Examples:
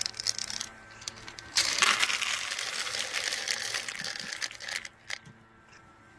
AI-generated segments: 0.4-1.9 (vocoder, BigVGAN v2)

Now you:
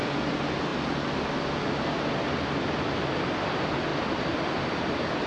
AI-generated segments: 3.9-5.3 (vocoder, BigVGAN v2)

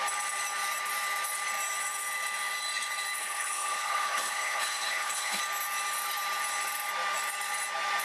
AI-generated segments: 3.2-5.4 (codec, HILCodec)

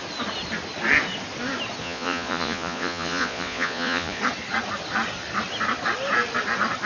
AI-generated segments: 1.8-4.2 (vocoder, Vocos)

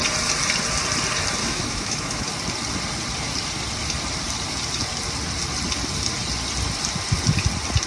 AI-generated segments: 1.4-2.3 (autoencoder, DAC-VAE)